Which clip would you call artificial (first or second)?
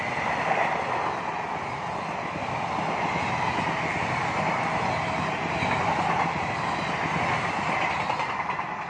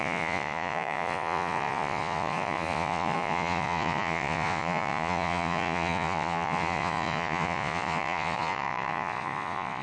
second